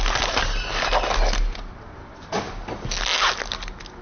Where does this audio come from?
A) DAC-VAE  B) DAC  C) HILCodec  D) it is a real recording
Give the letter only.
D